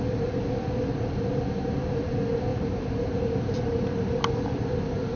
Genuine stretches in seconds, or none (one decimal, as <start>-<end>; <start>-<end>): 0.0-2.5; 4.2-5.2